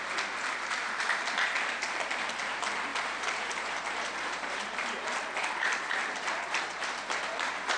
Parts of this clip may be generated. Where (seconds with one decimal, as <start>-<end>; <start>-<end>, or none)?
2.9-7.8